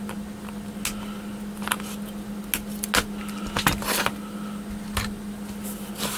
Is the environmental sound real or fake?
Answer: real